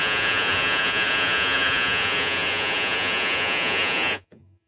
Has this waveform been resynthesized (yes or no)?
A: yes